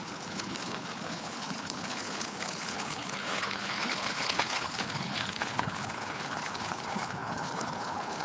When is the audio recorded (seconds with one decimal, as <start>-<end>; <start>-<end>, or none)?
none